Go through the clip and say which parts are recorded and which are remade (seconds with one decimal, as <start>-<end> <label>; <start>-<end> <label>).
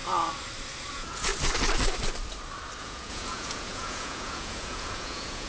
0.0-0.9 recorded; 0.9-1.3 remade; 1.3-2.8 recorded; 2.8-5.5 remade